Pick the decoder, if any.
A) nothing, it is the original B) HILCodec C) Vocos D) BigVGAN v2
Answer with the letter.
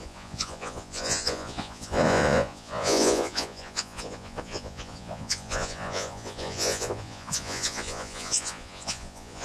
C